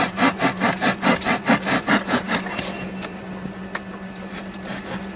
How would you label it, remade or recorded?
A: recorded